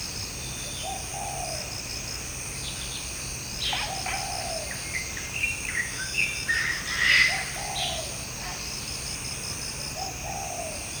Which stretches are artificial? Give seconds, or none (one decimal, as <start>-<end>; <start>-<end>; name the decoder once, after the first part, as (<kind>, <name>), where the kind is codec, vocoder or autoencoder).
5.4-6.8 (autoencoder, DAC-VAE)